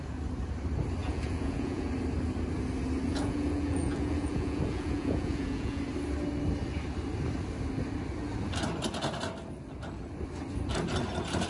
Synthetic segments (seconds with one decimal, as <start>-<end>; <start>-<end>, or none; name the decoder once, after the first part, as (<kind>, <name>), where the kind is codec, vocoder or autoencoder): 1.0-1.9 (vocoder, Vocos); 3.1-5.8